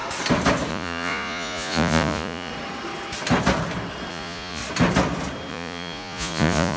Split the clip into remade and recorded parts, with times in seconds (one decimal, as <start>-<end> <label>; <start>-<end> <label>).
0.0-0.7 recorded; 0.7-2.5 remade; 2.5-4.1 recorded; 4.1-4.6 remade; 4.6-5.5 recorded; 5.5-6.8 remade